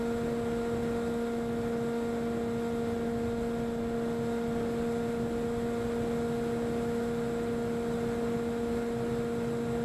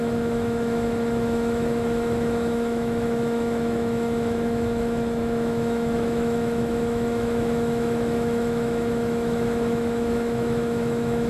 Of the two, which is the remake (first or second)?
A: second